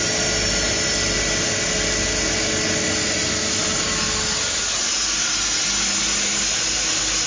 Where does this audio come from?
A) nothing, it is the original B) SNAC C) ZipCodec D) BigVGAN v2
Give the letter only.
A